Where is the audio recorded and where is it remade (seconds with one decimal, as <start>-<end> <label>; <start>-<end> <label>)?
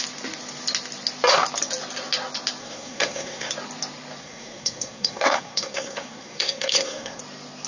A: 0.0-2.6 recorded; 2.6-3.5 remade; 3.5-4.2 recorded; 4.2-7.2 remade; 7.2-7.7 recorded